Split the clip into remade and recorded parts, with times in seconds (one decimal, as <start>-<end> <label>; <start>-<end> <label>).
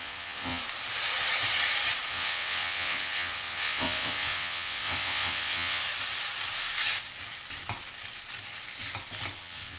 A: 0.0-0.6 remade; 0.6-2.1 recorded; 2.1-5.8 remade; 5.8-9.4 recorded; 9.4-9.8 remade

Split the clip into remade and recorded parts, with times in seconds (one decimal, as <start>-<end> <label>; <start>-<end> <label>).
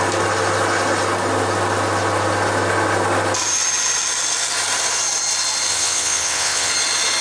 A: 0.0-5.7 recorded; 5.7-6.7 remade; 6.7-7.2 recorded